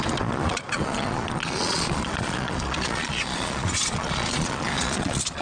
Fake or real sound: fake